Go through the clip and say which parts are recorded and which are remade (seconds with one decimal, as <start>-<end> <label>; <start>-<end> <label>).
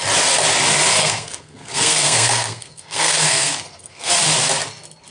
0.0-1.0 recorded; 1.0-4.1 remade; 4.1-5.1 recorded